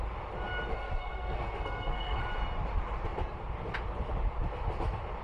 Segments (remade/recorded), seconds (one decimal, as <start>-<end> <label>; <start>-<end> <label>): 0.0-0.7 recorded; 0.7-2.2 remade; 2.2-5.2 recorded

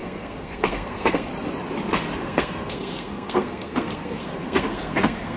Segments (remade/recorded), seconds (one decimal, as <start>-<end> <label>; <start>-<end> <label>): 0.0-1.3 remade; 1.3-2.2 recorded; 2.2-5.4 remade

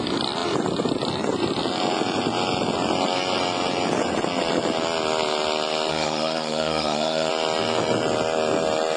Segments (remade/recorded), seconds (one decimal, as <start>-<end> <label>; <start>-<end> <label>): 0.0-5.9 recorded; 5.9-7.3 remade; 7.3-9.0 recorded

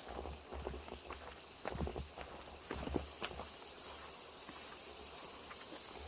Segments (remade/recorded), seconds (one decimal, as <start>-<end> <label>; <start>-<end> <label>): 0.0-6.1 recorded

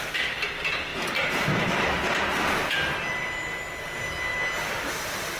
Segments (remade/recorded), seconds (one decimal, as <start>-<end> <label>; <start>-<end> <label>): 0.0-0.9 recorded; 0.9-2.2 remade; 2.2-5.4 recorded

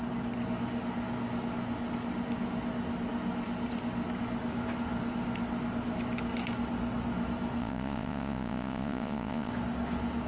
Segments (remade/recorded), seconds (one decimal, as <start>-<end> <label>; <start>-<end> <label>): 0.0-7.6 recorded; 7.6-9.5 remade; 9.5-10.3 recorded

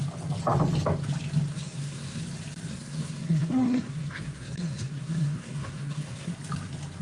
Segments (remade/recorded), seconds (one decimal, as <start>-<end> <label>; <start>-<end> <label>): 0.0-1.5 recorded; 1.5-2.2 remade; 2.2-2.7 recorded; 2.7-6.3 remade; 6.3-7.0 recorded